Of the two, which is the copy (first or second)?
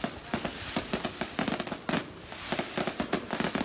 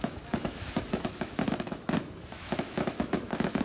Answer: second